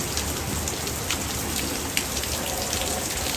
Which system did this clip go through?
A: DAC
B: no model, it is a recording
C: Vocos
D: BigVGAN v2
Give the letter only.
B